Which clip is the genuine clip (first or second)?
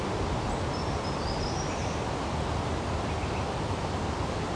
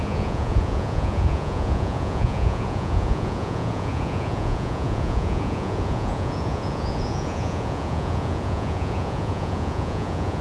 first